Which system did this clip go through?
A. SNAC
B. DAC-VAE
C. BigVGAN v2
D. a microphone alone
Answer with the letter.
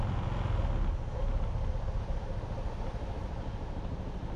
D